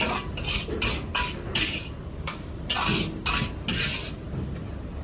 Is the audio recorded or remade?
recorded